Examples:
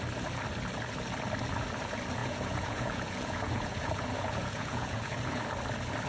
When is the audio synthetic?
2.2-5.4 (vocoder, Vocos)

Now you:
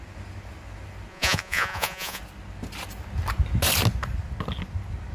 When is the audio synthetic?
1.1-2.2 (vocoder, Vocos)